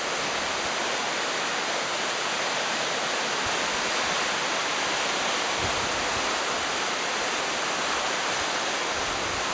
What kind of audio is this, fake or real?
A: real